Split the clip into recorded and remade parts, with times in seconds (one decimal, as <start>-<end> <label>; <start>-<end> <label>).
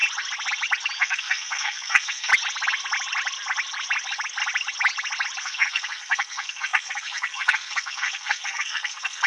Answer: 0.0-1.0 recorded; 1.0-2.3 remade; 2.3-5.4 recorded; 5.4-9.3 remade